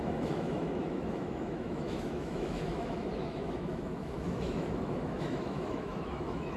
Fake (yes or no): yes